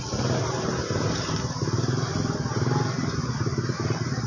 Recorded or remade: recorded